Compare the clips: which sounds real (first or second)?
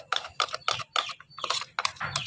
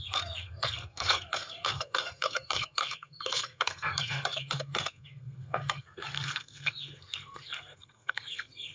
first